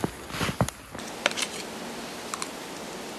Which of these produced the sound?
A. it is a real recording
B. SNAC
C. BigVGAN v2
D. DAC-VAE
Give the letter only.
A